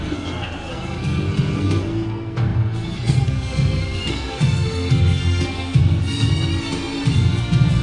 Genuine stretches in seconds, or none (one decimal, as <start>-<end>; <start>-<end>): 6.5-7.2